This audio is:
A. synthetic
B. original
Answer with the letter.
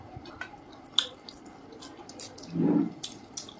B